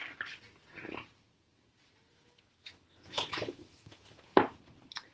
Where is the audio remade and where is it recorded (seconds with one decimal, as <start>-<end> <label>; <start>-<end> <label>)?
0.0-2.1 recorded; 2.1-4.2 remade; 4.2-5.1 recorded